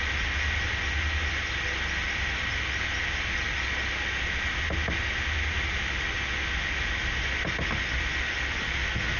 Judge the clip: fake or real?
real